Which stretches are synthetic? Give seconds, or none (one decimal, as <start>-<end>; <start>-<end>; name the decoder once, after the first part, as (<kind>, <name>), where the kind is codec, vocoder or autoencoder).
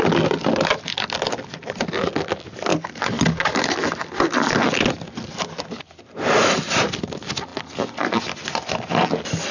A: none